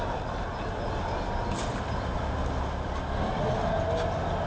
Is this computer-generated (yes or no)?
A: no